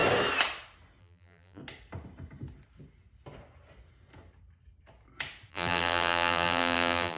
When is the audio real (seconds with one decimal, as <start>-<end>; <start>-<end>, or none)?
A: 0.0-1.0; 1.6-5.5

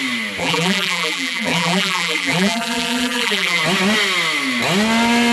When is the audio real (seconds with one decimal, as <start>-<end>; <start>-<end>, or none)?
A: 0.0-0.4; 3.6-5.3